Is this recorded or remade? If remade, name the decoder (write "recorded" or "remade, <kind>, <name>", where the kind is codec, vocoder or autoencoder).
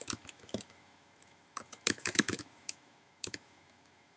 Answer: remade, autoencoder, DAC-VAE